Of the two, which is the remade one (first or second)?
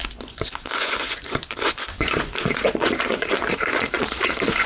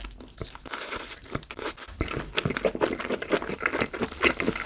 first